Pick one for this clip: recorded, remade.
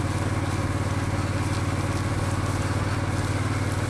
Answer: recorded